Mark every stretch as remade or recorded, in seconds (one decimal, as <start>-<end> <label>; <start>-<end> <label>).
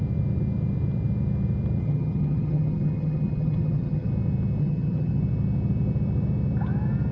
0.0-1.8 recorded; 1.8-4.1 remade; 4.1-4.6 recorded; 4.6-5.2 remade; 5.2-7.1 recorded